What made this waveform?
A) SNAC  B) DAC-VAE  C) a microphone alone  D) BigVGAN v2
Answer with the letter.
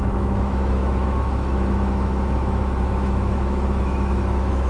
B